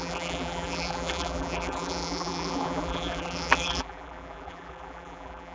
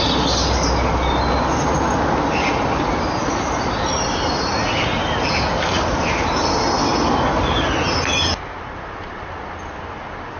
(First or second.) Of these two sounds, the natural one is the second